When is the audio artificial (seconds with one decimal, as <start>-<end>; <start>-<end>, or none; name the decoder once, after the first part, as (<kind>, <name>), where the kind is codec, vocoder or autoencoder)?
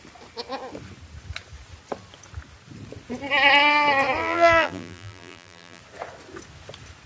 4.2-5.8 (vocoder, BigVGAN v2)